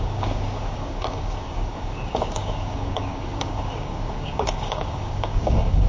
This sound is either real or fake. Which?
fake